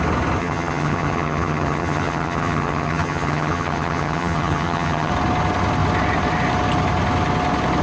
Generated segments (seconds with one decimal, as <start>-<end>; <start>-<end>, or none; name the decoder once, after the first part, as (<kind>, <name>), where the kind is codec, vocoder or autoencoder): 0.4-5.1 (vocoder, HiFi-GAN)